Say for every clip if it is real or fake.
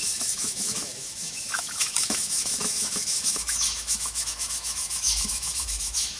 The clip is fake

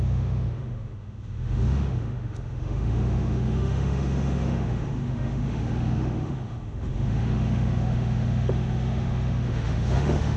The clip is fake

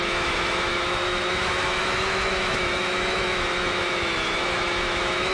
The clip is fake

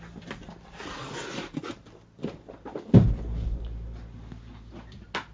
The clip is real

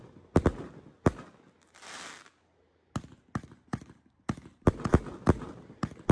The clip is real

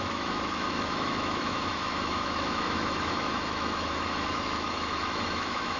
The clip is fake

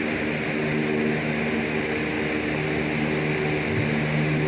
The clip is real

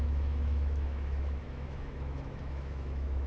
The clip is fake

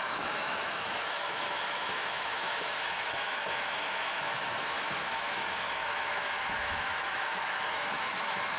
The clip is fake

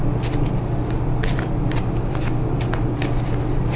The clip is real